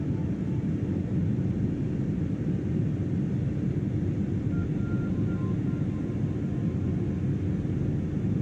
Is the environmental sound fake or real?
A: real